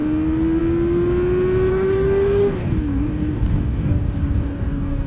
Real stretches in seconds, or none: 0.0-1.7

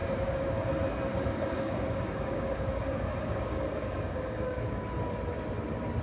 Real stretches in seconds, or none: 0.7-1.3; 4.9-6.0